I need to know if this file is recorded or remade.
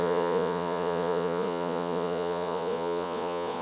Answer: remade